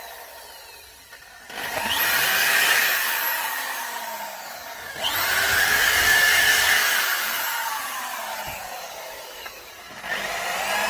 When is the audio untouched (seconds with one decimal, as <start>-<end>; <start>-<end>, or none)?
0.0-2.3; 4.9-5.5; 9.7-10.9